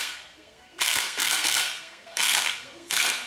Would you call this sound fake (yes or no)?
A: yes